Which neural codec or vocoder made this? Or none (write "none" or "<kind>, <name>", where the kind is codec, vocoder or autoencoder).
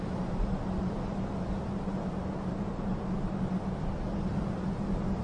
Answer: none